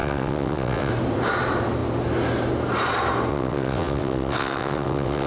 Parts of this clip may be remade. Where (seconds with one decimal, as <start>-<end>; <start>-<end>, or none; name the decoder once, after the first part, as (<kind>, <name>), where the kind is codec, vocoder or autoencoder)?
0.0-0.9 (vocoder, WaveNeXt); 3.3-5.3